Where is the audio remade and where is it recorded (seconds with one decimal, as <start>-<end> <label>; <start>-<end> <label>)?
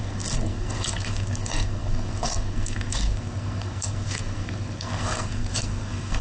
0.0-6.2 remade